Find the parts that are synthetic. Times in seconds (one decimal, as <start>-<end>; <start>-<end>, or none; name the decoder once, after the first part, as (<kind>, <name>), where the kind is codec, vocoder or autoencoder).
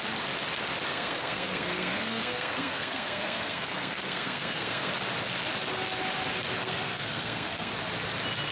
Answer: 0.9-4.9 (codec, SNAC); 6.6-7.7